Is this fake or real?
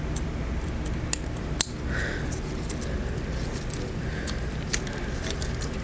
real